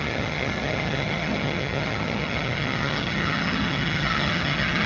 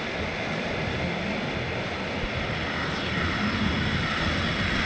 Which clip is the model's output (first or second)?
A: first